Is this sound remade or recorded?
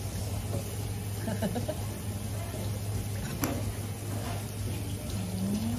recorded